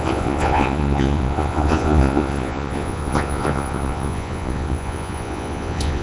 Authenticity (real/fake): fake